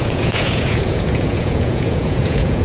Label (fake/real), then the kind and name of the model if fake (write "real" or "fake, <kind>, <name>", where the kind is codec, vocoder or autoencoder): fake, vocoder, Vocos